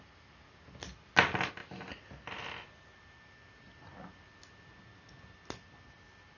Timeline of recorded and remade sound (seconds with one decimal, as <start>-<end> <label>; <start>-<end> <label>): 0.0-6.4 recorded